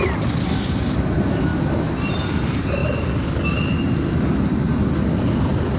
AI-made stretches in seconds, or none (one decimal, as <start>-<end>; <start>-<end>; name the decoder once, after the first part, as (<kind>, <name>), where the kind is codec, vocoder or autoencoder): 0.0-1.5 (vocoder, BigVGAN v2); 2.1-2.8